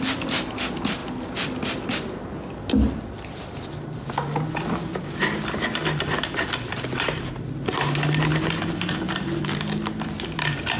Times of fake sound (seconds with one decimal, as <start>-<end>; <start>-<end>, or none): none